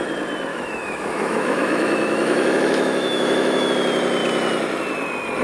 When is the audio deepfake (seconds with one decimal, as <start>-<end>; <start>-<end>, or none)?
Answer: 0.5-3.7